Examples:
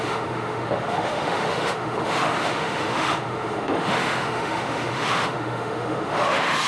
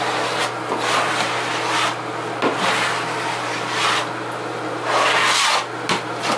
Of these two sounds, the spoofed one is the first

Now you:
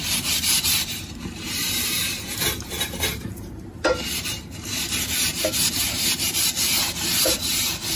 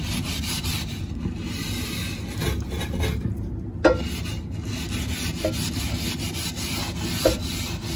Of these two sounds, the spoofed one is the first